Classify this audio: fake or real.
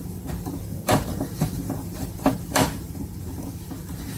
fake